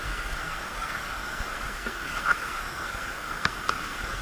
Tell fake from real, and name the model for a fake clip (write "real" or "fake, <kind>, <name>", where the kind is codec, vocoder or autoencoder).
fake, codec, SNAC